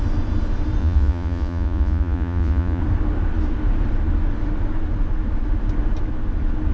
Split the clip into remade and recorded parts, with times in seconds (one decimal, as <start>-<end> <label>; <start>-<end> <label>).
0.0-0.8 recorded; 0.8-2.8 remade; 2.8-6.7 recorded